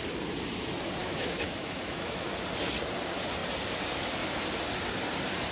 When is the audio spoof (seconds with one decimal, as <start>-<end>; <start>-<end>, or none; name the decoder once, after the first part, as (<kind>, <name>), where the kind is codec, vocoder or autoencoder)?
1.0-2.3 (autoencoder, DAC-VAE)